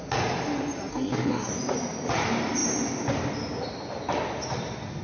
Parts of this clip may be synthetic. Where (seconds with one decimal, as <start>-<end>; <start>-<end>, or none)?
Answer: 0.9-1.5